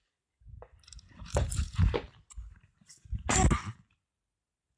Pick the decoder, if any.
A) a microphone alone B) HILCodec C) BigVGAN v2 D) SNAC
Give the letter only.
A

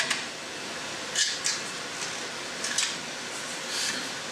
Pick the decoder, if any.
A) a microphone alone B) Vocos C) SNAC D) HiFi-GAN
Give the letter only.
A